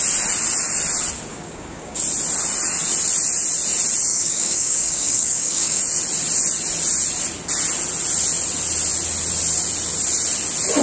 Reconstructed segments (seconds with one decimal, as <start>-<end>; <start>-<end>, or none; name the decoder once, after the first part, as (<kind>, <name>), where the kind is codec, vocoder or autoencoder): 1.3-2.0 (codec, DAC); 4.1-5.8